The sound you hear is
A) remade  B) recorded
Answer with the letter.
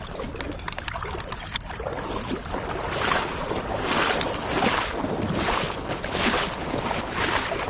B